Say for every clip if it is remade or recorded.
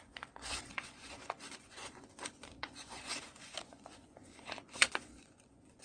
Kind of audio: remade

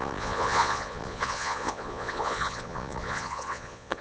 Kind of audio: remade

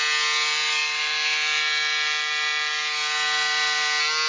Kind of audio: recorded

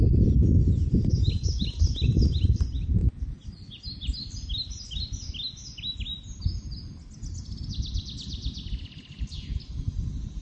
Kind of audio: recorded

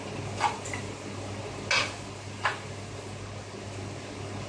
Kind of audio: recorded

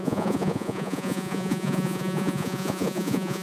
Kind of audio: remade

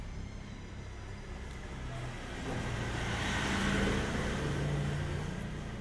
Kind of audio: recorded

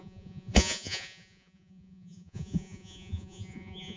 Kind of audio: remade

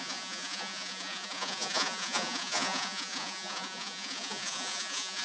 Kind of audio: remade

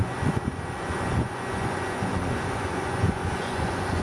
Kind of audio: remade